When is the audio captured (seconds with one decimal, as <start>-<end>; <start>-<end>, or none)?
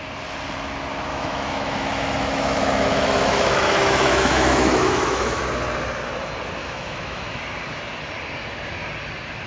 0.0-1.1; 5.4-6.6; 7.4-9.5